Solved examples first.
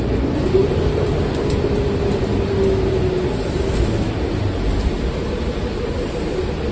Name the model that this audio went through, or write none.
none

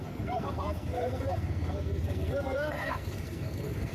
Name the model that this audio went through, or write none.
codec, SNAC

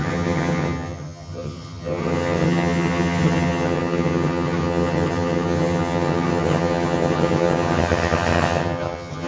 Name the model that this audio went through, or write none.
vocoder, HiFi-GAN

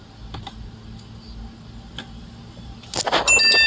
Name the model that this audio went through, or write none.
none